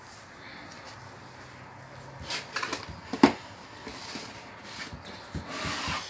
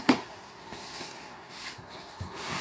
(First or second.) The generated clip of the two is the second